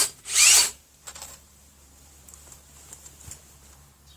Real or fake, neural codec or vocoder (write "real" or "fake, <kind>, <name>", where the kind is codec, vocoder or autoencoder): fake, vocoder, BigVGAN v2